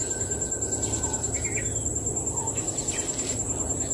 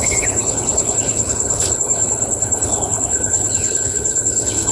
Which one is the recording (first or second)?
first